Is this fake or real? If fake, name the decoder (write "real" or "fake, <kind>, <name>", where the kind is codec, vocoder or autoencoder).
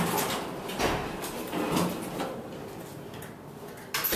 real